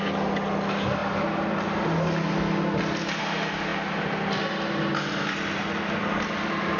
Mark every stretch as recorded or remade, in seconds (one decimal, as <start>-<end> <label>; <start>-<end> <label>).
0.0-6.8 recorded